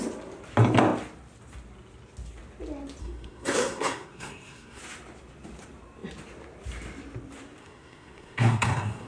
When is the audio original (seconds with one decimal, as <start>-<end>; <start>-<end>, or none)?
0.0-3.0; 4.8-7.6